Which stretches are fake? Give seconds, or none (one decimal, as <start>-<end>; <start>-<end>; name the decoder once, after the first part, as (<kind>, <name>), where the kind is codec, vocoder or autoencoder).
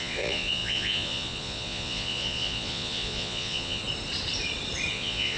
0.0-3.8 (vocoder, Vocos); 4.9-5.4